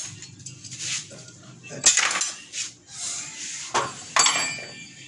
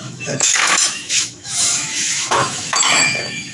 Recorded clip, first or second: first